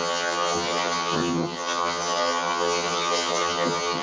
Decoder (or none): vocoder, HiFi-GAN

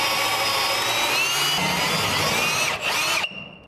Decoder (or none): none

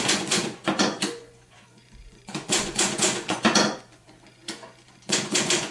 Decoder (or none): vocoder, Vocos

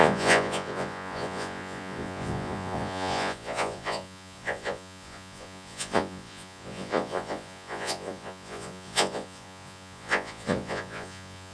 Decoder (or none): vocoder, Vocos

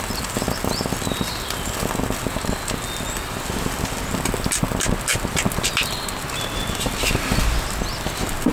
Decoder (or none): none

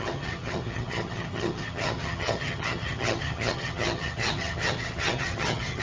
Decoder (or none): vocoder, HiFi-GAN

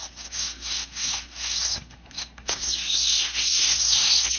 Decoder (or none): codec, SNAC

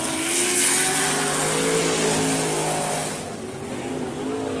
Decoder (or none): none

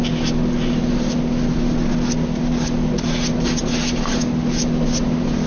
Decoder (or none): none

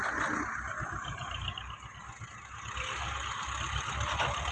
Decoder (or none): none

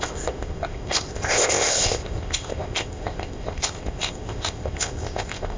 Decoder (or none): codec, ZipCodec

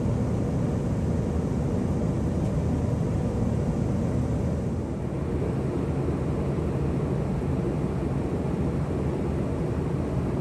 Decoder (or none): none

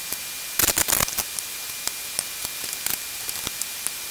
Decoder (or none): none